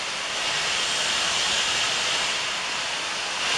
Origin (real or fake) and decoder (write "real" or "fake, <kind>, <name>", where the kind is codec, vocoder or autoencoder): real